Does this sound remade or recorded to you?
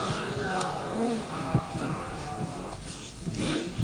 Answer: remade